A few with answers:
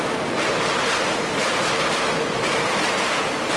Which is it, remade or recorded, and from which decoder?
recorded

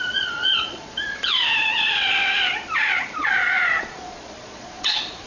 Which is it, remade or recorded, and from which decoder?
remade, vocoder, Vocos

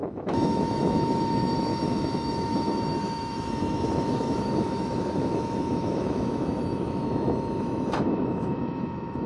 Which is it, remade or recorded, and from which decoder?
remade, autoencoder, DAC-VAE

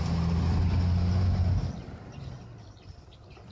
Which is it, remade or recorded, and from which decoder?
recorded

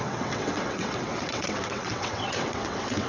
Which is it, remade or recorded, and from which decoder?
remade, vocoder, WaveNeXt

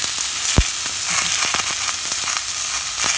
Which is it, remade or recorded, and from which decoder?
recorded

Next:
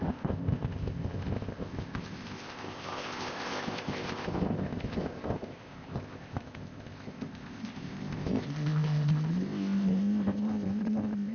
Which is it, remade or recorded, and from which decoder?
remade, codec, ZipCodec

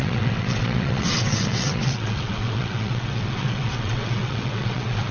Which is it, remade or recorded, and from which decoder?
remade, vocoder, WaveNeXt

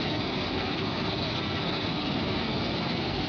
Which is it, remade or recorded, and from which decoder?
remade, codec, SNAC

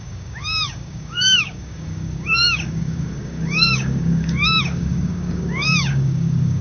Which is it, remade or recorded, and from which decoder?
remade, codec, DAC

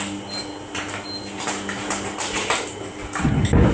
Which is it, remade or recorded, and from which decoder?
recorded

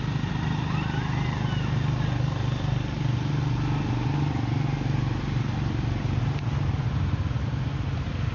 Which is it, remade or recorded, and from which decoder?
recorded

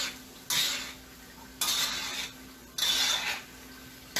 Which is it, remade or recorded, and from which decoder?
recorded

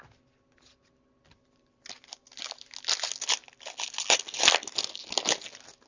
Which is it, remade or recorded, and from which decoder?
recorded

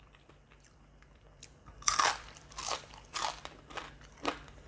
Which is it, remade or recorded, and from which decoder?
remade, vocoder, BigVGAN v2